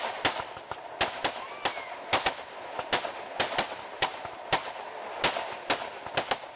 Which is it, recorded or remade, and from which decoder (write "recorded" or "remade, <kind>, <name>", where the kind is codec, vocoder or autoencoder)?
recorded